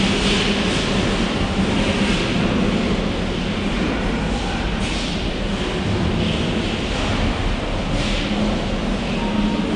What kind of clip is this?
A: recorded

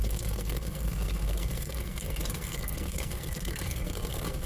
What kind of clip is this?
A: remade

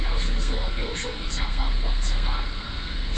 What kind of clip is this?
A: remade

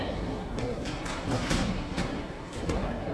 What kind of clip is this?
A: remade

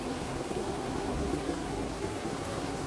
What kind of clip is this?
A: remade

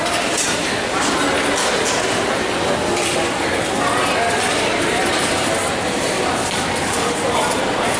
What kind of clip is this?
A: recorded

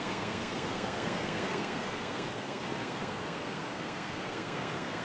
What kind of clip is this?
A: remade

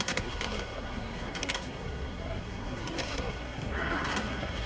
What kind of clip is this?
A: remade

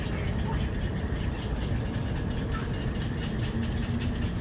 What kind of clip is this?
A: recorded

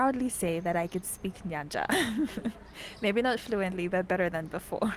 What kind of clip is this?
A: recorded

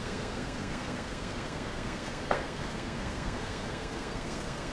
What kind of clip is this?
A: remade